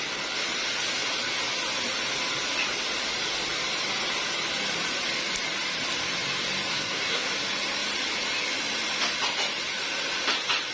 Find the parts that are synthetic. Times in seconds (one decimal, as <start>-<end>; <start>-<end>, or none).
6.7-7.3

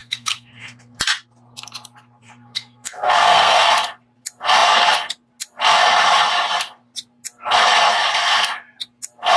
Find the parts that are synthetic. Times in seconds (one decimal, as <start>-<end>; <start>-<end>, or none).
0.0-1.0; 2.2-3.7

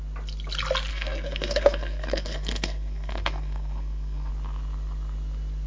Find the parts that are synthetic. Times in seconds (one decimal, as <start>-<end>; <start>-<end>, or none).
0.9-4.3

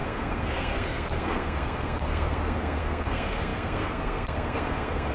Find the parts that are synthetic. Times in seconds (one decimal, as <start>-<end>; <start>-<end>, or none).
0.0-5.1

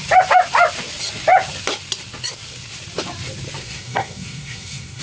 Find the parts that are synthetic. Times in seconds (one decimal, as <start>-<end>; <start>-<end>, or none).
3.6-5.0

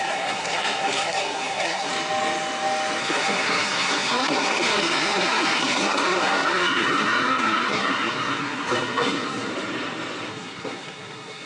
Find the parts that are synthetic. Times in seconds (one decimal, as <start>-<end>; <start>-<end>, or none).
0.0-1.9; 3.0-9.5; 10.3-11.5

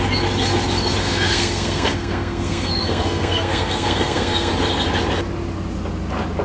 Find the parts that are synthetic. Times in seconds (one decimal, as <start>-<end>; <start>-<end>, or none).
1.0-4.5

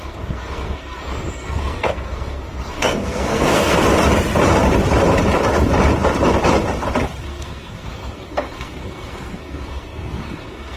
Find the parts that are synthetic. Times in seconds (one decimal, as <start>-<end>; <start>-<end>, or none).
0.0-3.8; 7.2-10.8